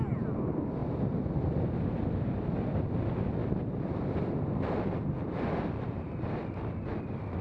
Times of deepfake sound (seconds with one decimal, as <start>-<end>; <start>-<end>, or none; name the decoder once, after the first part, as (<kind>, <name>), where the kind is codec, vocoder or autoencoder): 0.8-2.5 (vocoder, BigVGAN v2); 3.4-7.0